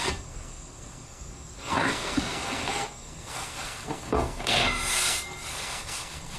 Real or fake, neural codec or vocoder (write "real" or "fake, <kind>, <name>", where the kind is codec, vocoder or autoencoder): fake, codec, SNAC